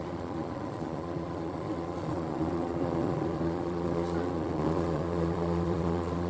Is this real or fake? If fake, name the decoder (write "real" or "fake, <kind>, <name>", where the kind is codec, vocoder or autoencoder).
fake, vocoder, Vocos